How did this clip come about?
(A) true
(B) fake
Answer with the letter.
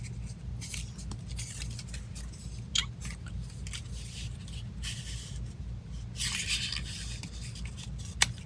A